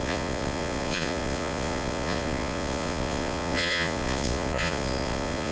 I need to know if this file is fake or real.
fake